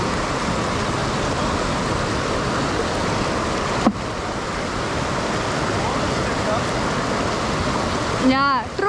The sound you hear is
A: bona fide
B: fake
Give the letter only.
A